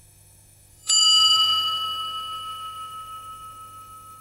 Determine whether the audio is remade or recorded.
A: remade